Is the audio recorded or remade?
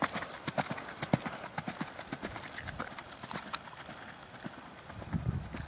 recorded